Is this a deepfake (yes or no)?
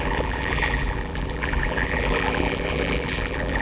yes